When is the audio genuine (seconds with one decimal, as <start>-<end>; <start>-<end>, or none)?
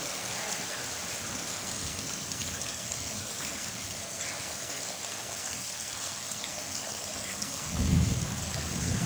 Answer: 0.8-1.3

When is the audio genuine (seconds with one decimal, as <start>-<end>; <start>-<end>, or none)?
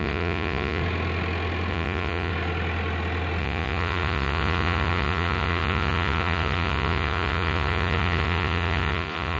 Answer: 0.8-1.7; 2.3-3.4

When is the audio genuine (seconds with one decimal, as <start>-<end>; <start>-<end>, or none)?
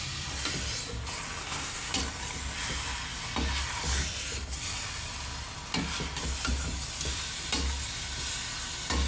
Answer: 0.0-1.4; 1.9-9.1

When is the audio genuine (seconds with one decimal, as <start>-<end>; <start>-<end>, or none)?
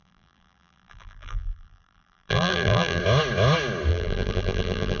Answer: 3.0-3.9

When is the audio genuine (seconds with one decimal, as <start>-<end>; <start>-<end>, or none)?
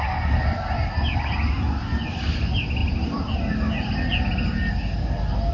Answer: 0.0-5.5